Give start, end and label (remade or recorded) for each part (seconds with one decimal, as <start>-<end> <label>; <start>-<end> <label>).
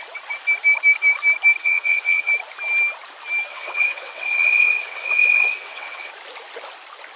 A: 0.0-1.6 recorded; 1.6-2.3 remade; 2.3-3.5 recorded; 3.5-6.1 remade; 6.1-7.2 recorded